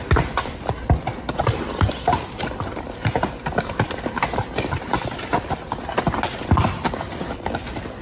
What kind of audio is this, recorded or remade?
recorded